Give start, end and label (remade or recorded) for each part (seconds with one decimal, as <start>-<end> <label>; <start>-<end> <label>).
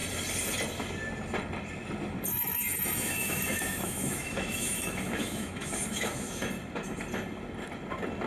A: 0.0-2.3 recorded; 2.3-6.5 remade; 6.5-8.3 recorded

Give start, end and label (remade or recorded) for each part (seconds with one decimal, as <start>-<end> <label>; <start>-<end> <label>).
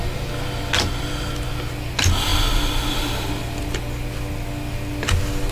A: 0.0-5.5 recorded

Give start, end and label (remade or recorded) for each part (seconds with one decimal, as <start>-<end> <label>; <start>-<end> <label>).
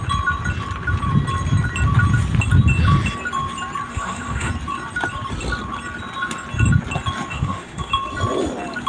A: 0.0-3.9 recorded; 3.9-4.5 remade; 4.5-7.3 recorded; 7.3-7.9 remade; 7.9-8.9 recorded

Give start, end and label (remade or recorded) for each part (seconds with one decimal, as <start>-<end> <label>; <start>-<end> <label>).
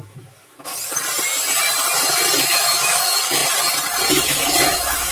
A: 0.0-0.7 remade; 0.7-2.4 recorded; 2.4-3.4 remade; 3.4-4.1 recorded; 4.1-5.1 remade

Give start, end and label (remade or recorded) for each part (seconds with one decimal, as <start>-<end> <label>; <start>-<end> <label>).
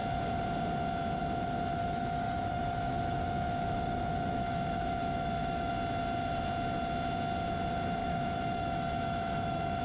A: 0.0-1.8 recorded; 1.8-5.7 remade; 5.7-8.0 recorded; 8.0-9.8 remade